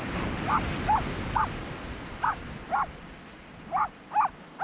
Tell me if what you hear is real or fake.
real